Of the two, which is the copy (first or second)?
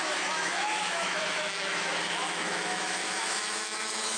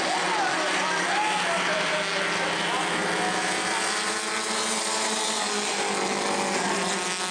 first